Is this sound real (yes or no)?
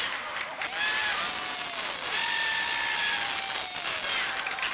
yes